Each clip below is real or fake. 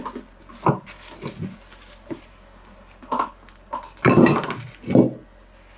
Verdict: real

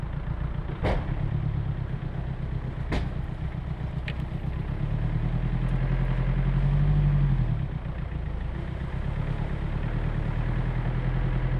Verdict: real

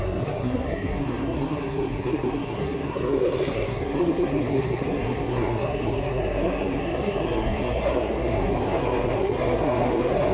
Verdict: fake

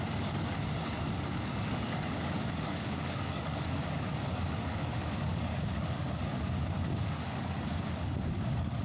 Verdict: fake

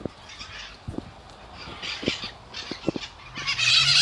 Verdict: real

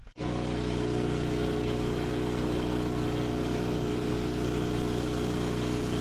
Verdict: fake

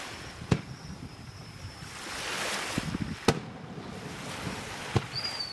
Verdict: real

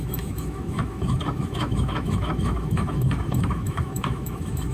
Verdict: fake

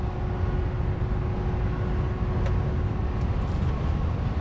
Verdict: real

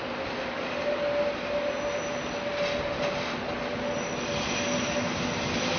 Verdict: real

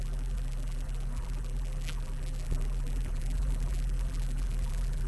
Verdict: fake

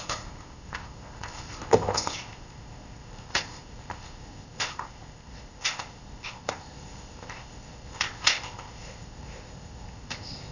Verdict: fake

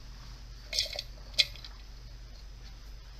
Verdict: real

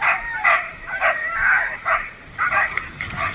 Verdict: fake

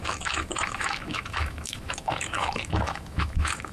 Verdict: fake